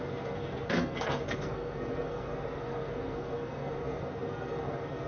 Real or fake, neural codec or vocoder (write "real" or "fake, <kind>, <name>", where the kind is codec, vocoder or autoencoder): fake, codec, SNAC